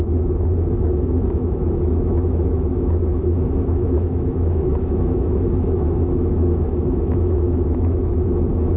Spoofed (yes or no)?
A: yes